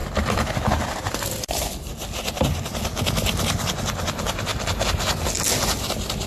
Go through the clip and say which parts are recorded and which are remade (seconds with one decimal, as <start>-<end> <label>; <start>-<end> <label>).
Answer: 0.0-4.5 remade; 4.5-6.3 recorded